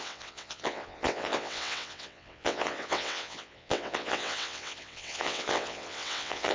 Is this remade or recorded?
remade